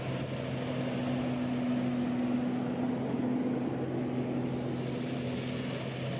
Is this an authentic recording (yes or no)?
yes